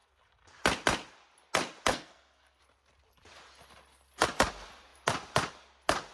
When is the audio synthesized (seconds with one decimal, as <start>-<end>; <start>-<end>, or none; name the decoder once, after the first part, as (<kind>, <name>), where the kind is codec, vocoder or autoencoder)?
1.9-2.6 (codec, SNAC)